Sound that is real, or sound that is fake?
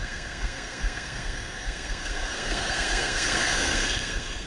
fake